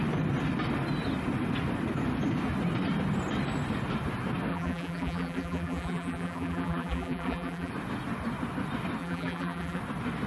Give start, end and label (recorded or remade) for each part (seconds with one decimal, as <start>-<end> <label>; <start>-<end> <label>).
0.0-4.5 recorded; 4.5-7.7 remade; 7.7-9.0 recorded; 9.0-9.8 remade; 9.8-10.3 recorded